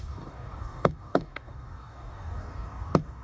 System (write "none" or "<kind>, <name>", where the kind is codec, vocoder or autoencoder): codec, DAC